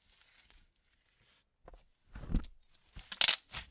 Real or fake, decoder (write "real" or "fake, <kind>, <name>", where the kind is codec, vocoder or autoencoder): real